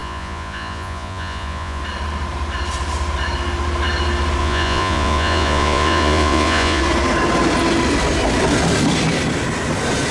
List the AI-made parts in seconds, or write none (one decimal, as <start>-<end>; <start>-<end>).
0.0-1.8; 4.4-6.8